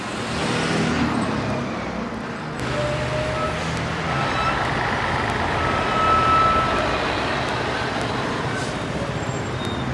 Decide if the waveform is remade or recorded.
recorded